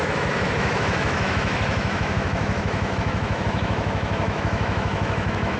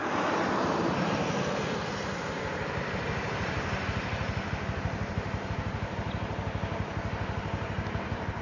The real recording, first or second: second